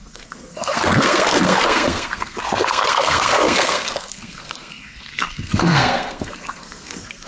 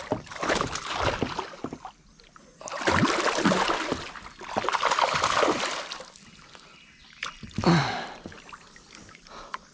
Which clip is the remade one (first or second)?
first